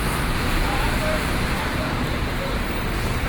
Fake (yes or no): yes